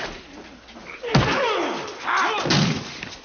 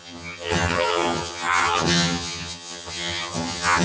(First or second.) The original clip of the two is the first